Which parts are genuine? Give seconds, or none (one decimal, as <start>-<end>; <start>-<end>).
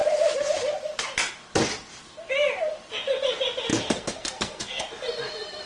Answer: 0.0-3.7; 4.8-5.7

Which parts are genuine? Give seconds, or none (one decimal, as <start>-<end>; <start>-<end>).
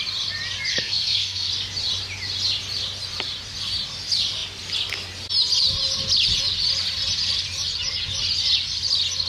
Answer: 0.0-0.7; 1.5-9.3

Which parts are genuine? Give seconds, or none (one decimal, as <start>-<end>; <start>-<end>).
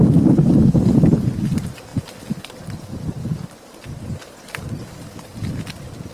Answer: 0.0-6.1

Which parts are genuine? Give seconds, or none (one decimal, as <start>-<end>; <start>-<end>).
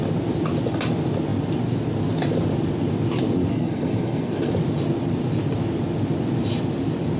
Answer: 0.0-3.5; 4.5-7.2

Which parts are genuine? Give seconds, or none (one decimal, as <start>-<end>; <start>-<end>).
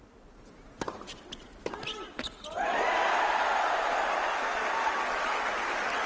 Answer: 0.0-6.1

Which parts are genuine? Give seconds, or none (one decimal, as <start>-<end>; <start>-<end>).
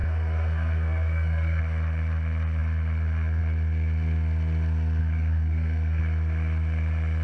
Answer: 1.6-5.0; 6.0-7.2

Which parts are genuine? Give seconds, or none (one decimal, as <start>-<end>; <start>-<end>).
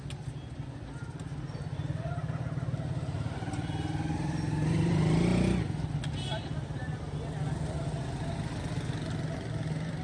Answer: 0.0-10.0